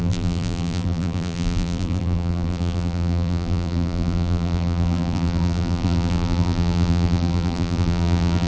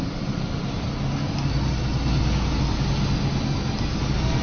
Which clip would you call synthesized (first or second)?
first